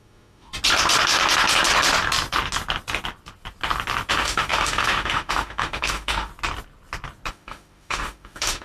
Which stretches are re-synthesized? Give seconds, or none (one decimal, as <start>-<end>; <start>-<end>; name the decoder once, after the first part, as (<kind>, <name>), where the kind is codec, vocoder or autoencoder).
0.0-0.5 (autoencoder, DAC-VAE); 4.1-6.3; 7.3-8.6